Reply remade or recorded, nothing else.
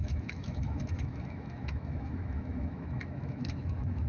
remade